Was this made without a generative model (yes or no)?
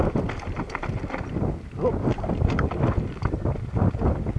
yes